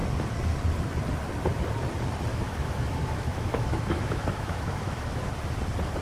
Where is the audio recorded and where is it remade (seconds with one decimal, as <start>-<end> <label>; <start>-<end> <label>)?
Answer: 0.0-2.3 recorded; 2.3-5.3 remade; 5.3-6.0 recorded